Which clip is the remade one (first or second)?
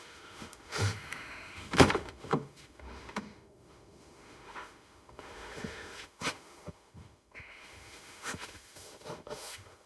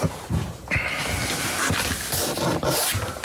first